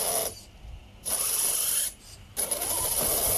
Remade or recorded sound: recorded